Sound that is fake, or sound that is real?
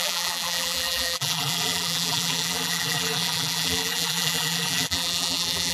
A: fake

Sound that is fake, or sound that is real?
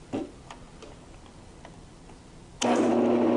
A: real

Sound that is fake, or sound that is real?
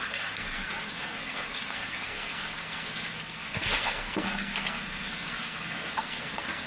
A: fake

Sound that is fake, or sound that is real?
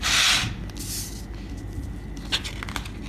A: real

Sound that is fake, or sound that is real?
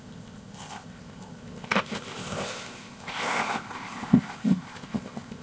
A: fake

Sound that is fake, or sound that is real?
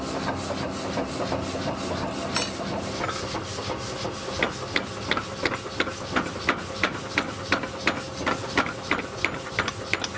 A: real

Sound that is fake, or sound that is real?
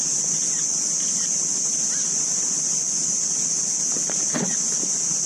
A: real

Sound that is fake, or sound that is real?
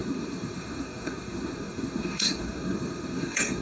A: fake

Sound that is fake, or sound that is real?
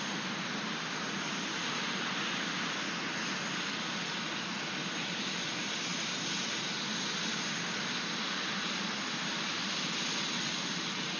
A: real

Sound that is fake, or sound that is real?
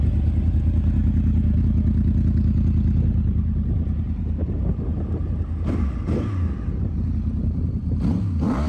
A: real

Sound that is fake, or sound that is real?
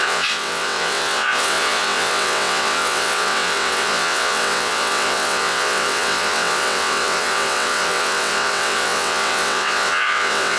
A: fake